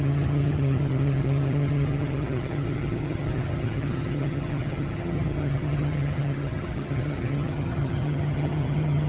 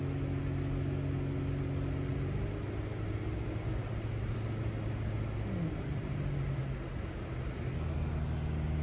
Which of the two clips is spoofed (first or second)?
first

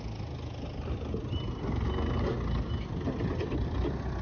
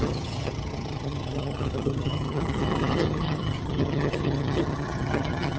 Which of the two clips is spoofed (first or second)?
second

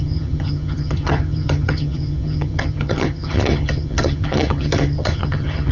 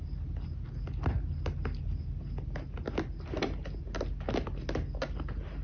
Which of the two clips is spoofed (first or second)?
first